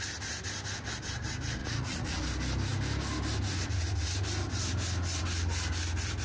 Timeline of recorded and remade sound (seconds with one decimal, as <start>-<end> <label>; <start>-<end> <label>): 0.0-1.6 recorded; 1.6-2.2 remade; 2.2-6.2 recorded